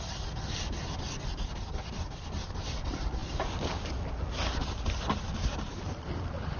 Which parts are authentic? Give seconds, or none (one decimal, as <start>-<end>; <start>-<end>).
0.0-6.6